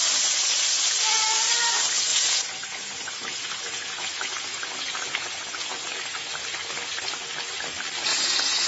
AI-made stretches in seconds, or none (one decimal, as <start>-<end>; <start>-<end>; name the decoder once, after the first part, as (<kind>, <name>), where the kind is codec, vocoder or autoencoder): 2.1-6.3 (vocoder, Vocos); 8.1-8.7

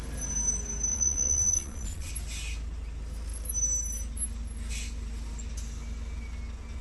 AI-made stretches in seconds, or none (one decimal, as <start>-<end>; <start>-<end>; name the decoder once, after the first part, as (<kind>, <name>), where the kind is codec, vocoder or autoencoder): 0.9-2.1 (vocoder, Vocos)